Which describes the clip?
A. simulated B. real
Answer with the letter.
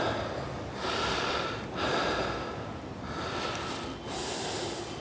B